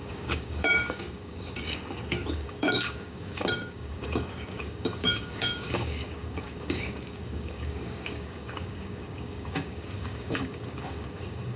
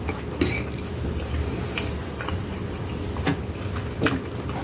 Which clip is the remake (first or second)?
first